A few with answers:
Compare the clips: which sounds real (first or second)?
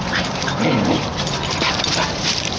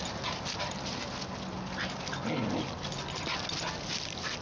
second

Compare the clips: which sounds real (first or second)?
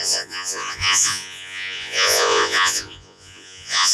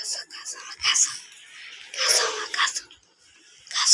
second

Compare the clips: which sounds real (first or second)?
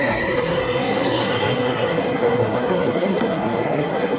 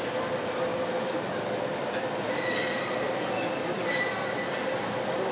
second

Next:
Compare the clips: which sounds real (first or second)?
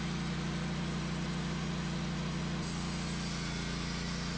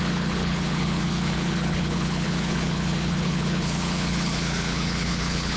first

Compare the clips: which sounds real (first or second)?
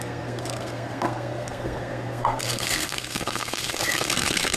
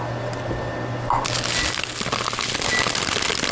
second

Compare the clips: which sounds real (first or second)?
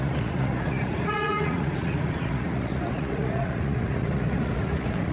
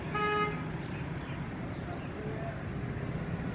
second